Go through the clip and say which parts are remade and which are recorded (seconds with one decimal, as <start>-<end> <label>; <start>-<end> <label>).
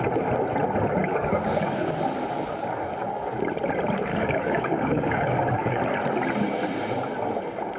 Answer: 0.0-1.0 recorded; 1.0-3.4 remade; 3.4-4.1 recorded; 4.1-5.8 remade; 5.8-7.8 recorded